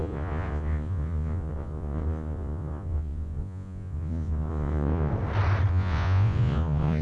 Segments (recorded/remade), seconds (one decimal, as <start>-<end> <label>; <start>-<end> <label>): 0.0-5.1 remade; 5.1-5.7 recorded; 5.7-7.0 remade